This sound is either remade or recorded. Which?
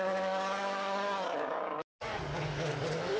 remade